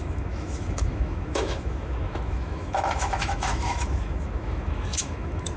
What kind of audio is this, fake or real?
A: fake